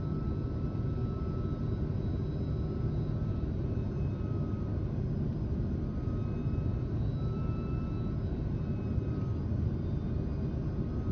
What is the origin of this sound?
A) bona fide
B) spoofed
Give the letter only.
A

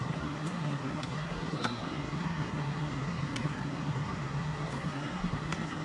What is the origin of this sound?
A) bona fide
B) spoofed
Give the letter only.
B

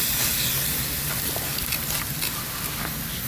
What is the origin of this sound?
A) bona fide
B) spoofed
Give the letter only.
A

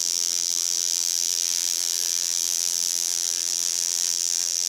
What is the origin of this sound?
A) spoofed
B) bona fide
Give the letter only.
A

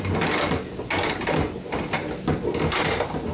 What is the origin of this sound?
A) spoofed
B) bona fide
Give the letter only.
B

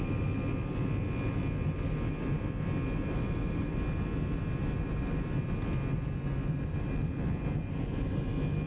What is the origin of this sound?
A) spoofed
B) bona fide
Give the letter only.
B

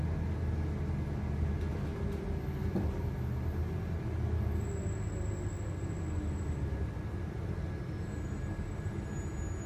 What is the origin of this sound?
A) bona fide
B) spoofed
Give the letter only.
A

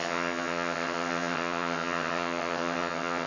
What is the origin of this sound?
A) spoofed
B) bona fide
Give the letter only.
A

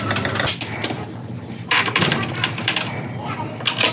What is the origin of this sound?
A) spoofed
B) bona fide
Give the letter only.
B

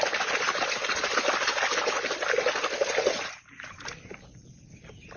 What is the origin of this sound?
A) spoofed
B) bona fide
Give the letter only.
B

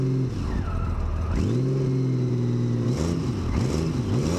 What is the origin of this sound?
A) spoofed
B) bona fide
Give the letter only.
B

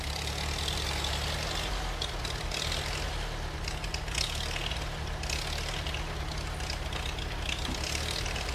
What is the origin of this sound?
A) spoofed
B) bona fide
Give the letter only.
B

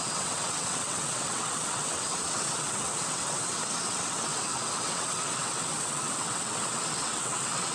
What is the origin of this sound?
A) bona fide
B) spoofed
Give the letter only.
B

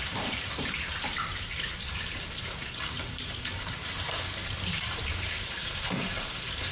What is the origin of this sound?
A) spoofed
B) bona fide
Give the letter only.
A